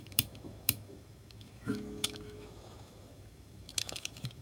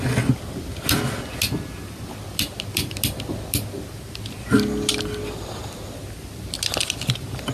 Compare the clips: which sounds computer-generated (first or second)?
first